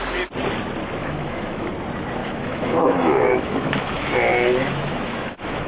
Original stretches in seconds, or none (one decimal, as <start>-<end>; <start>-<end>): 0.0-1.0; 1.7-2.2